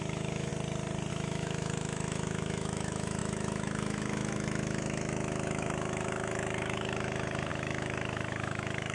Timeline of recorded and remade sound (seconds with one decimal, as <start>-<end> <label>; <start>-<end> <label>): 0.0-0.5 remade; 0.5-1.1 recorded; 1.1-8.9 remade